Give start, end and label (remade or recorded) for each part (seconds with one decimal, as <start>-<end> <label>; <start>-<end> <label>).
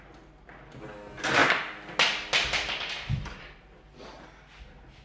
0.0-5.0 recorded